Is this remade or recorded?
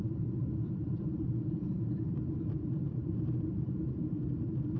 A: remade